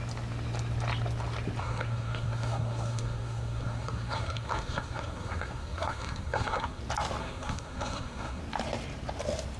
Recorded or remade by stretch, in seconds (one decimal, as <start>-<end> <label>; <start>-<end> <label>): 0.0-1.6 recorded; 1.6-6.8 remade; 6.8-7.2 recorded; 7.2-8.4 remade; 8.4-9.6 recorded